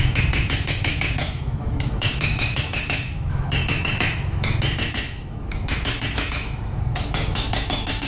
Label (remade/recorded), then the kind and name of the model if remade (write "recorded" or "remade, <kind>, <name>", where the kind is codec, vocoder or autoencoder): remade, autoencoder, DAC-VAE